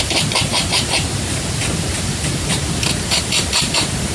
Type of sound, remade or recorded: remade